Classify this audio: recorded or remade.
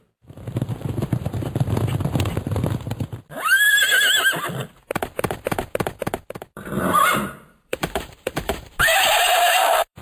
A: remade